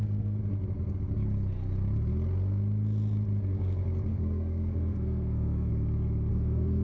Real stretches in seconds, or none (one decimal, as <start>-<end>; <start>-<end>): 0.4-4.1; 5.7-6.3

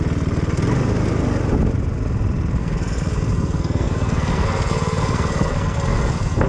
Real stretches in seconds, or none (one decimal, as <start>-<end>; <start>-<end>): 0.0-2.6